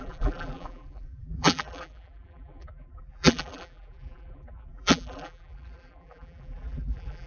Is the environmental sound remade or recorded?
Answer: remade